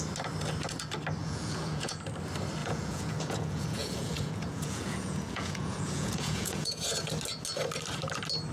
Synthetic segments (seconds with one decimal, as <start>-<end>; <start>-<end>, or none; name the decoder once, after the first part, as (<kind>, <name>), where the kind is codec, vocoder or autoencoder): 1.2-2.0 (vocoder, Vocos); 2.6-7.0